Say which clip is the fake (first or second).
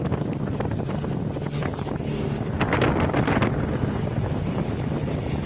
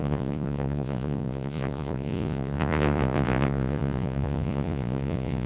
second